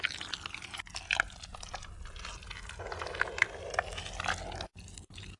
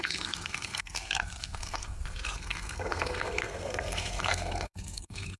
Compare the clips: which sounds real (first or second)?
first